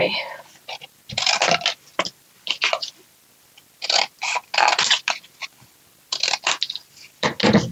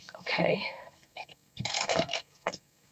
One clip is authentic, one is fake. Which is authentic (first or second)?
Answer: first